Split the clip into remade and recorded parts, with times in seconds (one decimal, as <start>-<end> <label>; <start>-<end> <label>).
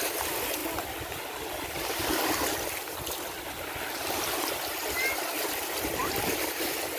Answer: 0.0-0.6 recorded; 0.6-2.2 remade; 2.2-6.0 recorded; 6.0-7.0 remade